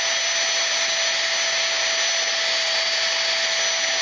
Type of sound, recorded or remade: recorded